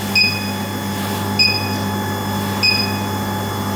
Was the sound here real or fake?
real